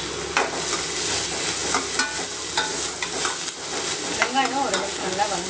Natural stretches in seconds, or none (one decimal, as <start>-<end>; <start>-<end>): 0.0-5.5